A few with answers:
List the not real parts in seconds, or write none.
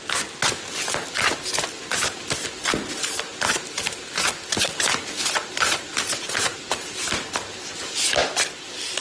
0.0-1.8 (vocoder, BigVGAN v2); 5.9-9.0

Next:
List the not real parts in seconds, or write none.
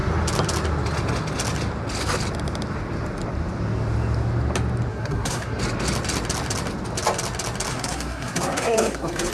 4.9-5.6 (codec, SNAC); 7.7-9.3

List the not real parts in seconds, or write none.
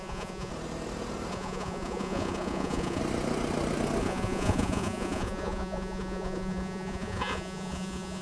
0.0-0.5 (vocoder, Vocos); 1.3-3.0; 4.0-8.2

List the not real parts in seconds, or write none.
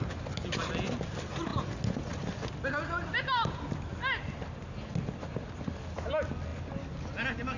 none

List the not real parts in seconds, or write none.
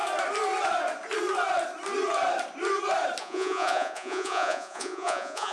3.2-5.5 (vocoder, Vocos)